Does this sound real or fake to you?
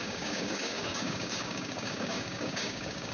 fake